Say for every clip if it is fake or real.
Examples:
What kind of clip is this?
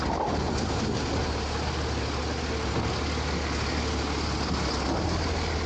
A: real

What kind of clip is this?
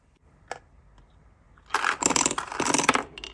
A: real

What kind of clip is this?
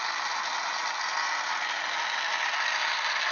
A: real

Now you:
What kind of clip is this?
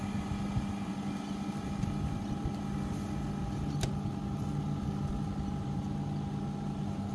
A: real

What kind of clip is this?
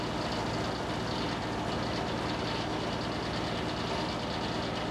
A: real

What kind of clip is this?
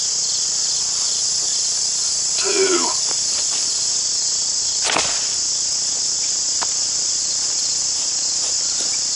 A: real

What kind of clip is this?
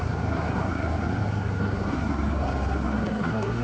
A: fake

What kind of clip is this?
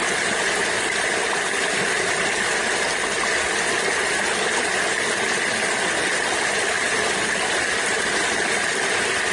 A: real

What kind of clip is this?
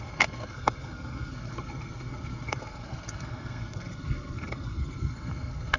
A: fake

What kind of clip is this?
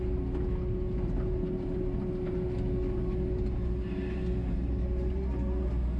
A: real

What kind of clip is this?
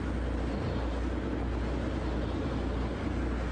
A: real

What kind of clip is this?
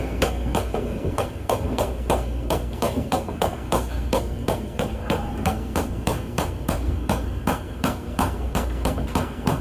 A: fake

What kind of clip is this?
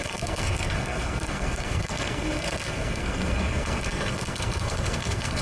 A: fake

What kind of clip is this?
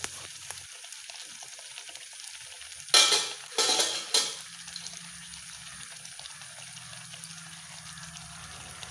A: real